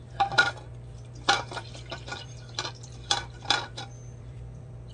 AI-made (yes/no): yes